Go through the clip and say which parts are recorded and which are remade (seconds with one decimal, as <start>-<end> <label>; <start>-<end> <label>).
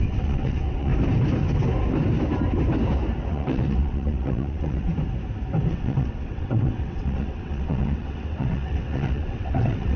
0.0-0.9 remade; 0.9-3.3 recorded; 3.3-4.9 remade; 4.9-5.7 recorded; 5.7-10.0 remade